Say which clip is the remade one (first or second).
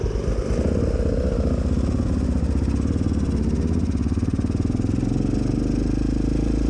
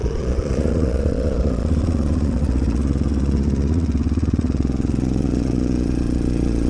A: second